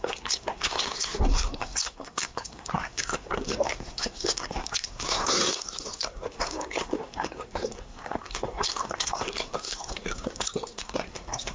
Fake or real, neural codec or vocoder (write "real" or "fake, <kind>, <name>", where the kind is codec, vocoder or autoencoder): fake, codec, SNAC